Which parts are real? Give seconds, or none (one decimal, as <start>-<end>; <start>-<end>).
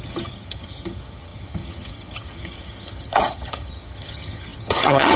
none